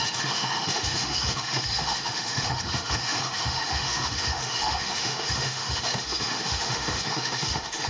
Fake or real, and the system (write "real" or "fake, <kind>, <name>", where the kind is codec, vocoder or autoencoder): fake, autoencoder, DAC-VAE